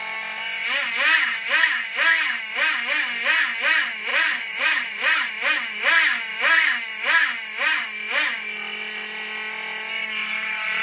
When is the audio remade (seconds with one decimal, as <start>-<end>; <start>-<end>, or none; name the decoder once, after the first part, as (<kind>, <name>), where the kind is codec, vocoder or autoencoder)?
4.1-5.3 (vocoder, Vocos)